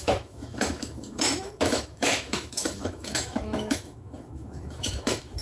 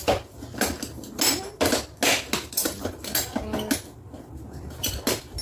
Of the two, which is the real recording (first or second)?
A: second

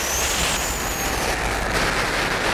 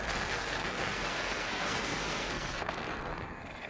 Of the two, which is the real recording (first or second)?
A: first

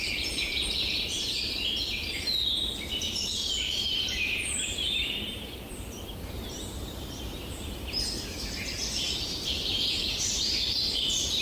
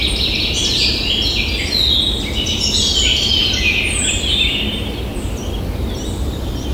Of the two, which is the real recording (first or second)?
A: second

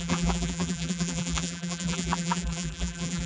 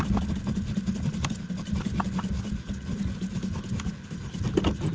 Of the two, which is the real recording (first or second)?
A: second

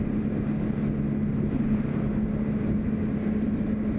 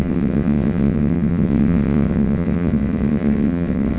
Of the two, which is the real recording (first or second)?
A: first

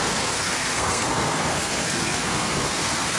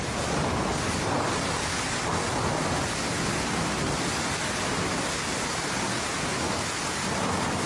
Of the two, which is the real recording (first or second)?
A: second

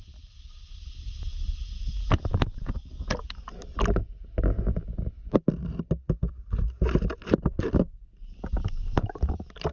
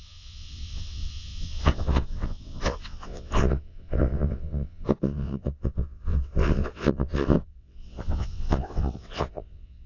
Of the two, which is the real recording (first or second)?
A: first